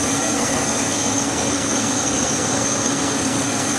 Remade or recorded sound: remade